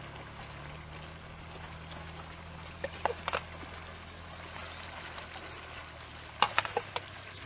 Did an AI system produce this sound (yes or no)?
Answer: no